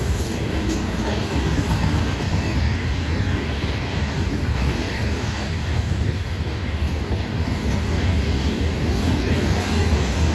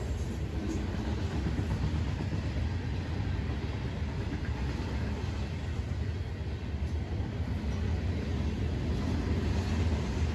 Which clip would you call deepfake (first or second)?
first